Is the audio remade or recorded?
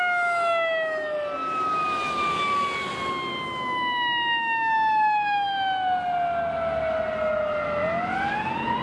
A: recorded